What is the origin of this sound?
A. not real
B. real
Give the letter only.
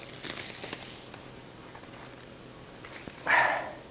B